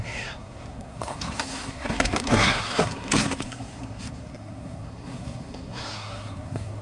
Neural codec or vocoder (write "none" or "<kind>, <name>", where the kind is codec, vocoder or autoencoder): codec, SNAC